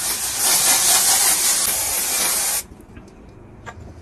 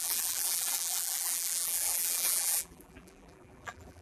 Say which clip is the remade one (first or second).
second